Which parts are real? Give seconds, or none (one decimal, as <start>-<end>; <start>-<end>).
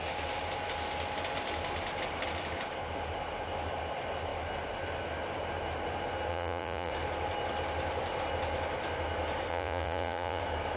0.0-6.3; 6.9-9.5; 10.4-10.8